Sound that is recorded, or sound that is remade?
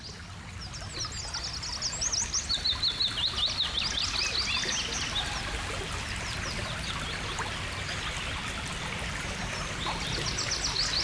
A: recorded